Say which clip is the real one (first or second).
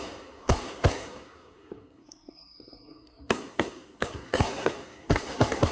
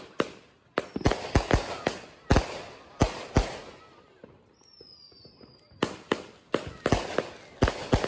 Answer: second